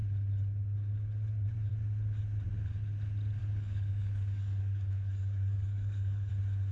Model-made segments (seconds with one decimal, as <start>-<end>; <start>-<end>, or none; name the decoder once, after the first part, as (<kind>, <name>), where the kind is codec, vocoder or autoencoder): 3.4-6.3 (codec, DAC)